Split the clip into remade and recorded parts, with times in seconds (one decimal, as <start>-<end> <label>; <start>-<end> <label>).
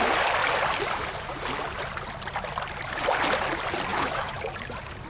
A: 0.0-3.9 recorded; 3.9-4.4 remade; 4.4-5.1 recorded